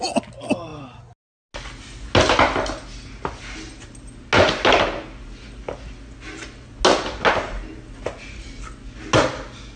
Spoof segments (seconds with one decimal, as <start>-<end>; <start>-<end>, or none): none